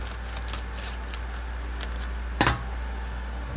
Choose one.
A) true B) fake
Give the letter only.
A